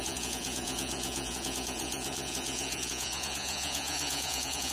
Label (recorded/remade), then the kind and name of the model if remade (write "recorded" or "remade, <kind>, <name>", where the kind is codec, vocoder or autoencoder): remade, vocoder, Vocos